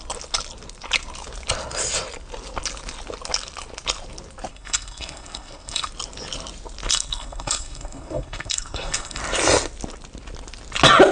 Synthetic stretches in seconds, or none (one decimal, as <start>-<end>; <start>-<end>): 4.5-5.9; 6.9-9.2